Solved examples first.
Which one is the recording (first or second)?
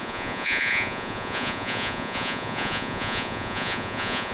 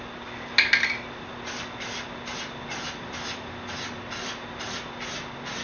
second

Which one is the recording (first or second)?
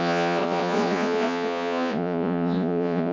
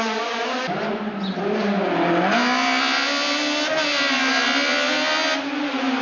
second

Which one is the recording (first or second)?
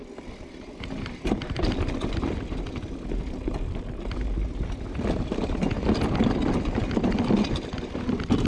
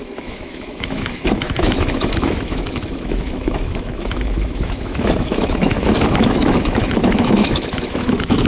first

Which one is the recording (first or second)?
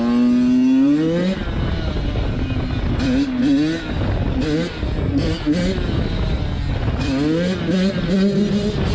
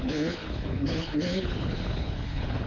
first